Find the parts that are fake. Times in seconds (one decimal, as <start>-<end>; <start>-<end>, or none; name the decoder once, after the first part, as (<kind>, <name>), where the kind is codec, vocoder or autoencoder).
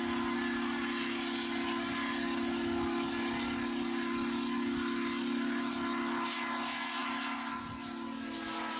none